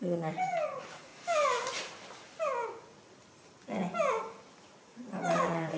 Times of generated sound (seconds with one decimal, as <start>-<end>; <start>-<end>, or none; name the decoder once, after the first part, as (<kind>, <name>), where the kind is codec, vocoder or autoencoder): 0.0-1.1 (vocoder, Vocos); 4.6-5.8